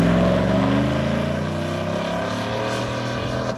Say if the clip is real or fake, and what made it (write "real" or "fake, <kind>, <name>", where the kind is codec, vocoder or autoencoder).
real